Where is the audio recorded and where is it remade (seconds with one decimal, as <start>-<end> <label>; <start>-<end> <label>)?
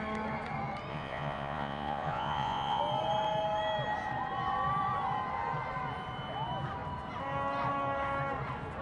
0.0-0.9 recorded; 0.9-2.8 remade; 2.8-8.8 recorded